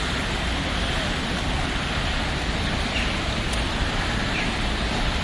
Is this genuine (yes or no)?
yes